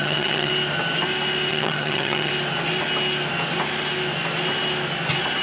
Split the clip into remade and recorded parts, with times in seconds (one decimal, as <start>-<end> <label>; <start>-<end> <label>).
0.0-0.5 remade; 0.5-1.5 recorded; 1.5-2.3 remade; 2.3-5.4 recorded